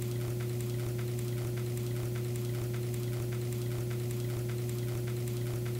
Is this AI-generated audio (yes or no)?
no